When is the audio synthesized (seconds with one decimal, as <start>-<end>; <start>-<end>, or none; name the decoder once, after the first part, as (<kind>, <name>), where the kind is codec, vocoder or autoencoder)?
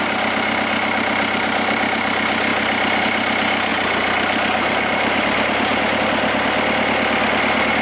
3.7-6.0 (vocoder, BigVGAN v2)